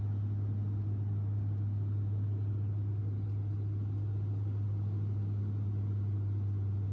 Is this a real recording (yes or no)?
yes